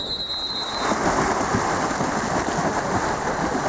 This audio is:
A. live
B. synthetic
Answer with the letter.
A